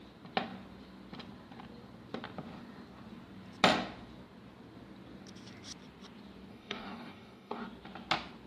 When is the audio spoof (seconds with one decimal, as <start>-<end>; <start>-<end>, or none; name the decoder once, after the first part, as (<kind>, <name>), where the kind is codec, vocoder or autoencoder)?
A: 6.5-7.6 (codec, DAC)